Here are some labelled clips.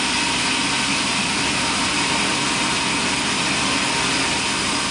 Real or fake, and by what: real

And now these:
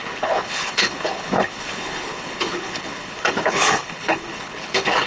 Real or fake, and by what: fake, codec, HILCodec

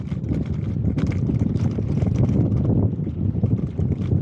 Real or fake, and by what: fake, vocoder, BigVGAN v2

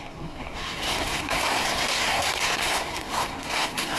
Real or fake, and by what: fake, codec, SNAC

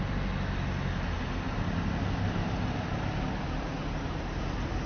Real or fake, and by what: real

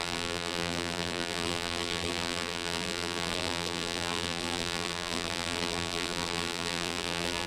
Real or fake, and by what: fake, vocoder, BigVGAN v2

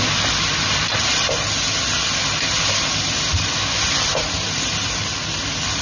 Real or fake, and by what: real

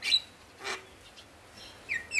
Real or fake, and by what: real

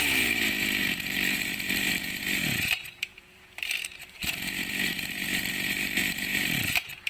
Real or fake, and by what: fake, vocoder, BigVGAN v2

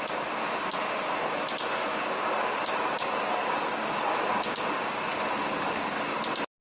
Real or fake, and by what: real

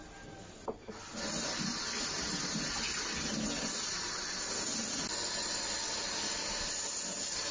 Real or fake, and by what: real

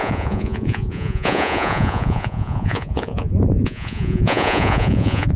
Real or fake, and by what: fake, vocoder, Vocos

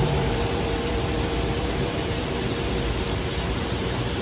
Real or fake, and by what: fake, vocoder, BigVGAN v2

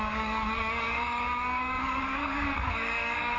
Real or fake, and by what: fake, codec, DAC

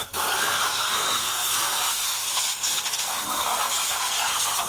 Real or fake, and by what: fake, codec, SNAC